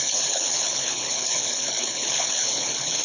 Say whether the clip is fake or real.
fake